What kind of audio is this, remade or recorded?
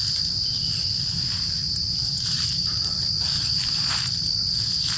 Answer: recorded